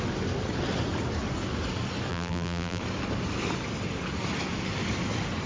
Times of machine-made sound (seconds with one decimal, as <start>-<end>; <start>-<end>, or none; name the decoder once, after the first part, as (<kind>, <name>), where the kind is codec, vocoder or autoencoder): 2.1-2.8 (vocoder, BigVGAN v2)